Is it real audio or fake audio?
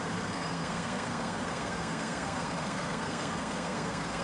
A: fake